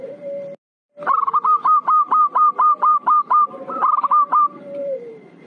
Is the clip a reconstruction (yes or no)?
yes